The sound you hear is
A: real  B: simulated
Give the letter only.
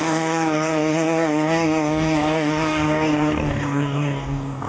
B